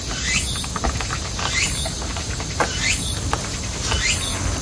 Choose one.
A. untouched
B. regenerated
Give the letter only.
A